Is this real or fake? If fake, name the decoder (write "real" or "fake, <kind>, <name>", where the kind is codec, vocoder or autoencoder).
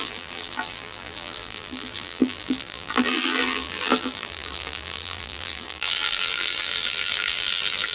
fake, vocoder, BigVGAN v2